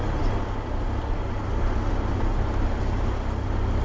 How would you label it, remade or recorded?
recorded